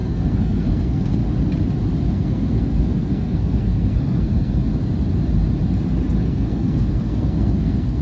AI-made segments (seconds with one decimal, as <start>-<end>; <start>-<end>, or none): 0.0-1.2; 2.1-4.6; 6.2-8.0